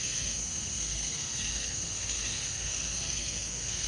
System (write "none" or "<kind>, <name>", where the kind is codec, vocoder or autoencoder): codec, SNAC